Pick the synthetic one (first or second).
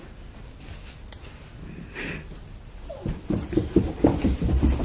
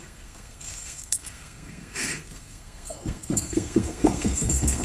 second